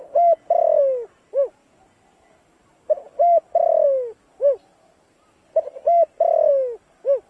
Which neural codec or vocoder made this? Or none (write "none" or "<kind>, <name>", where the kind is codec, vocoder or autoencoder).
none